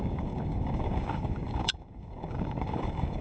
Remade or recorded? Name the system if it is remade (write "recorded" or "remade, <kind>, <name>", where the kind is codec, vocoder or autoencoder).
remade, codec, DAC